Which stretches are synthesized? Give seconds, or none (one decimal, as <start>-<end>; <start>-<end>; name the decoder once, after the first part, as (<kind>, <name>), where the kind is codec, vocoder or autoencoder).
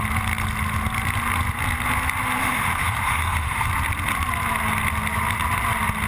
2.4-3.7 (autoencoder, DAC-VAE)